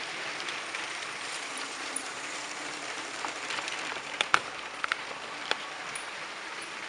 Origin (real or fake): fake